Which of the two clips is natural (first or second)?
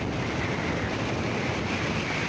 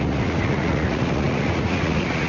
first